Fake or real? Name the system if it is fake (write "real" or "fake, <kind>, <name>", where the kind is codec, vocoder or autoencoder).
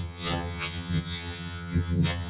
fake, vocoder, HiFi-GAN